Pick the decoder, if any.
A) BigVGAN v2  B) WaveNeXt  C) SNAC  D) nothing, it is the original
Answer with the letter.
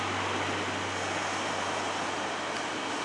D